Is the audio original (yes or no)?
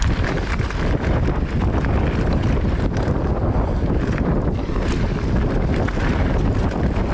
yes